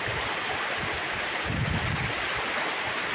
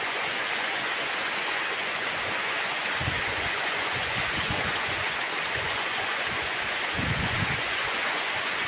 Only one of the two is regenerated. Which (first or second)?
second